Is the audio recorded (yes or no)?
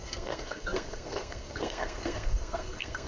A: no